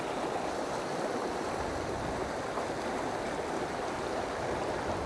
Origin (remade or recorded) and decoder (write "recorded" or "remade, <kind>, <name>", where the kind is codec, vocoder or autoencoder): recorded